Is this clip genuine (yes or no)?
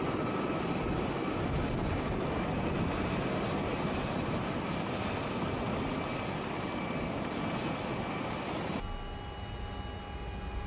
yes